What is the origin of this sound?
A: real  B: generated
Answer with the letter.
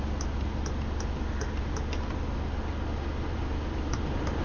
A